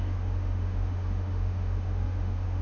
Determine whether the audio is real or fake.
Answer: fake